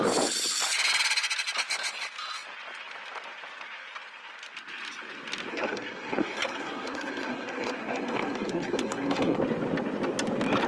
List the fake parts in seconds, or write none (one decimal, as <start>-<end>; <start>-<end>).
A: 5.5-9.4